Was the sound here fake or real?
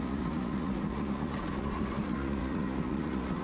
fake